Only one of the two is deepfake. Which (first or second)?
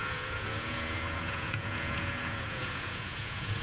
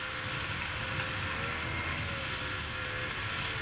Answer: first